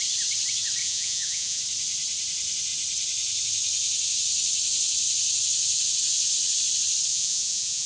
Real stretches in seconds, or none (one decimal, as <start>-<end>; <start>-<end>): 0.0-0.8; 1.6-7.1